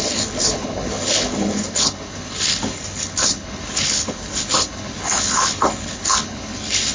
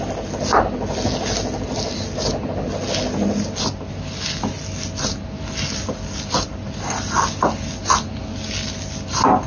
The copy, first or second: first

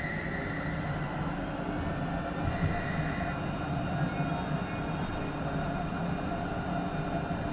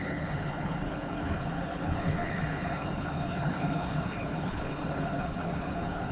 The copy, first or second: second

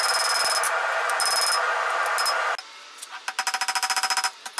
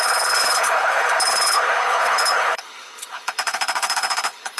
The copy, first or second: second